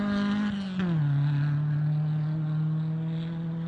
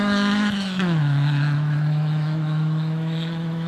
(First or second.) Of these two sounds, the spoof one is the second